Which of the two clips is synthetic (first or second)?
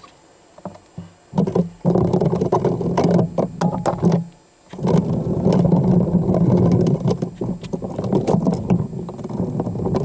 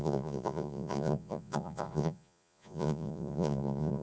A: second